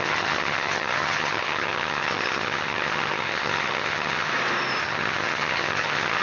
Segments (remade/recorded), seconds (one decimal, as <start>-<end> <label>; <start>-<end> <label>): 0.0-4.3 remade; 4.3-4.8 recorded; 4.8-6.2 remade